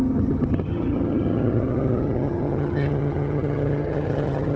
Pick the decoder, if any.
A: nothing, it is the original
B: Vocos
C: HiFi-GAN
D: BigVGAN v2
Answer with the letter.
C